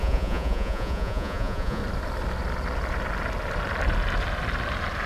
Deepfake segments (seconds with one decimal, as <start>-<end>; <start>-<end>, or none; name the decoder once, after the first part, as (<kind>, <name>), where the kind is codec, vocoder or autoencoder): 0.0-1.8 (vocoder, Vocos)